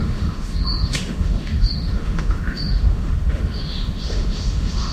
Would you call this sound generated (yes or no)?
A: yes